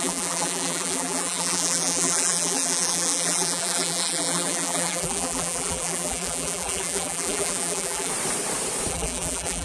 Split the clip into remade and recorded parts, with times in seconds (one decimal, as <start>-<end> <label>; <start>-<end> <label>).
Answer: 0.0-8.1 remade; 8.1-8.9 recorded; 8.9-9.6 remade